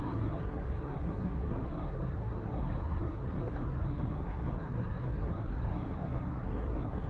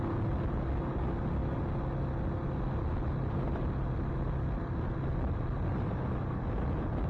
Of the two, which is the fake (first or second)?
first